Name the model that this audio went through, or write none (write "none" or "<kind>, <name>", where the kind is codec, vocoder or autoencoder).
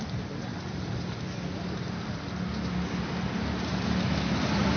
none